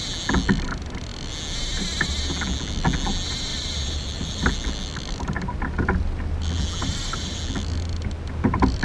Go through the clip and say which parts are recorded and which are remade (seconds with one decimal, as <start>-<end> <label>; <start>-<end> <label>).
0.0-3.5 recorded; 3.5-4.5 remade; 4.5-6.8 recorded; 6.8-7.4 remade; 7.4-8.8 recorded